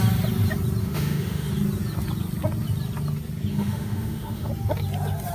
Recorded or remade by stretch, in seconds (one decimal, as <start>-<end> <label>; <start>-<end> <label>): 0.0-0.8 recorded; 0.8-1.5 remade; 1.5-3.5 recorded; 3.5-4.5 remade; 4.5-5.3 recorded